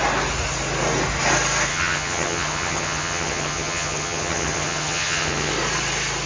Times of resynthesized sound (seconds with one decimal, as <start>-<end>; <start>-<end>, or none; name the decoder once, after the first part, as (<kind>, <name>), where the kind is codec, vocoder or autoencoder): 1.7-5.5 (vocoder, HiFi-GAN)